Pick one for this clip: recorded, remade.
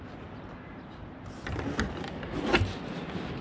recorded